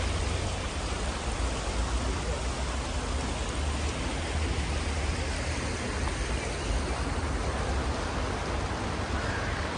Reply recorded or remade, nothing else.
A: recorded